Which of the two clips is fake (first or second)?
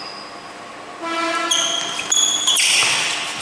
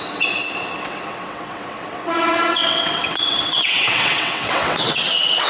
second